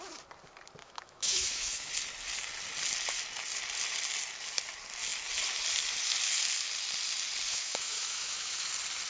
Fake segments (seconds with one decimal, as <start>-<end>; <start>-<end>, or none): 0.8-1.9; 7.5-8.7